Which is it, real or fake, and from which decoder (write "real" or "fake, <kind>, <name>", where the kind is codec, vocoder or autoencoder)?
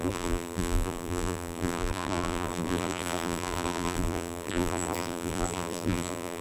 fake, vocoder, BigVGAN v2